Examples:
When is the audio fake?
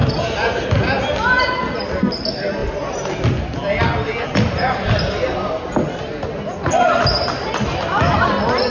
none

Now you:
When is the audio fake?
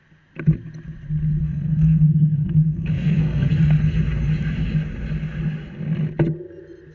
1.4-3.5 (codec, SNAC)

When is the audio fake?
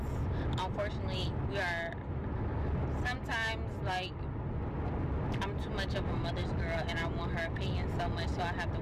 none